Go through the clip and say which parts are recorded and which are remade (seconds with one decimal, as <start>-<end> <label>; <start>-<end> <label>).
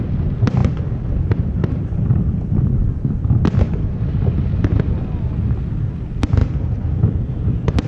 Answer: 0.0-7.9 recorded